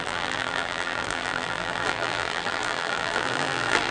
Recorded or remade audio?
remade